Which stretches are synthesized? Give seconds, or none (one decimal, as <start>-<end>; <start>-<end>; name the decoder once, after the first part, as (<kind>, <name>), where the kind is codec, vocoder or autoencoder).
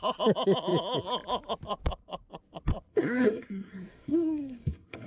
2.9-5.1 (codec, SNAC)